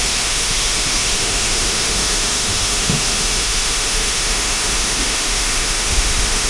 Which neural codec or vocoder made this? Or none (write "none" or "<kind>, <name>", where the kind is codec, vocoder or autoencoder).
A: autoencoder, DAC-VAE